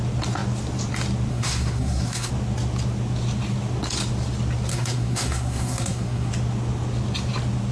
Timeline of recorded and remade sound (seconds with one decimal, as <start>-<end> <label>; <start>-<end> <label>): 0.0-1.3 recorded; 1.3-2.3 remade; 2.3-4.7 recorded; 4.7-6.3 remade; 6.3-7.7 recorded

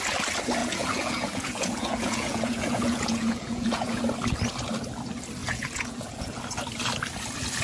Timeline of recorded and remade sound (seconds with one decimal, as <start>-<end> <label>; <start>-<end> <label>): 0.0-0.6 recorded; 0.6-4.0 remade; 4.0-5.4 recorded; 5.4-6.4 remade; 6.4-7.6 recorded